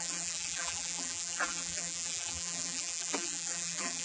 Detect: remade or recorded remade